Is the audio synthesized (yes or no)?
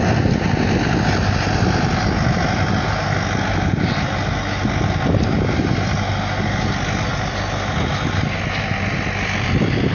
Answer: no